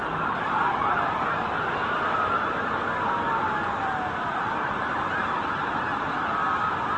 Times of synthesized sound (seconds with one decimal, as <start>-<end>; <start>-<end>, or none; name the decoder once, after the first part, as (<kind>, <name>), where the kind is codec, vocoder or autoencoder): 0.0-1.3 (vocoder, BigVGAN v2); 4.3-5.1